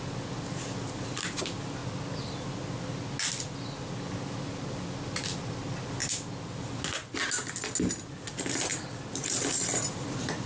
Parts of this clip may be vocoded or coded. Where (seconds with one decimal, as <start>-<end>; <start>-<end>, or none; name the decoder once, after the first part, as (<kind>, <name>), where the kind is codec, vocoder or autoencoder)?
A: none